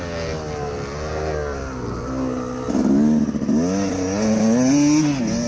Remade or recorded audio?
recorded